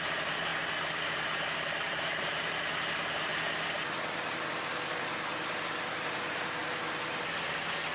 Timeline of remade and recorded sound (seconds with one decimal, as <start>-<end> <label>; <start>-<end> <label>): 0.0-0.5 remade; 0.5-1.9 recorded; 1.9-3.3 remade; 3.3-5.9 recorded; 5.9-6.6 remade; 6.6-7.2 recorded; 7.2-7.9 remade